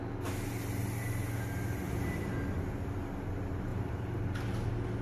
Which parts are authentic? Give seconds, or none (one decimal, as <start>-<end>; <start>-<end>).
0.0-5.0